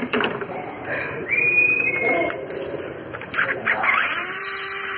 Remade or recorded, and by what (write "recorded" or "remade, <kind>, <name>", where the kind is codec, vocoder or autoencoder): remade, vocoder, BigVGAN v2